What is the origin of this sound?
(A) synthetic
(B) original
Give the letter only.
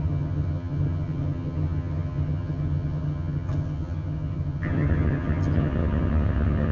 A